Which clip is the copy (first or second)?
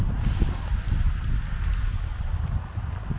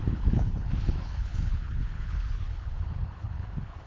second